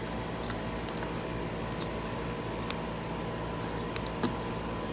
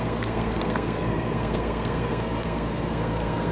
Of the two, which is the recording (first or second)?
first